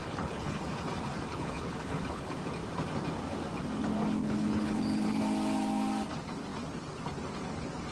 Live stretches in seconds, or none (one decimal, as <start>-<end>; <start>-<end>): 0.6-1.3; 2.4-4.2; 5.2-7.9

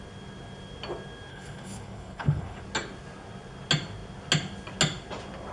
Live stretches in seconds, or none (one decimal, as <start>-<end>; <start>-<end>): 0.0-1.3; 2.6-5.5

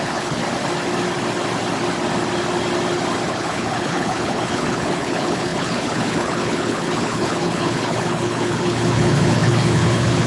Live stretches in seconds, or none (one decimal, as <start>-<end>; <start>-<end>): 0.4-3.3